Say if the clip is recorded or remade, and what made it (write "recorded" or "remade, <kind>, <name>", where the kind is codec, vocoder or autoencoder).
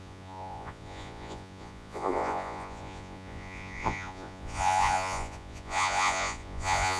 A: remade, vocoder, Vocos